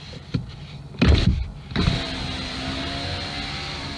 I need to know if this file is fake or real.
real